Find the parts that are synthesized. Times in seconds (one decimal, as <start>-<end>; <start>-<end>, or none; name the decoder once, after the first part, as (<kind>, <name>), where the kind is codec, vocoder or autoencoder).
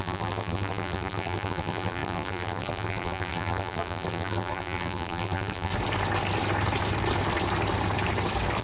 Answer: 0.0-5.7 (vocoder, BigVGAN v2)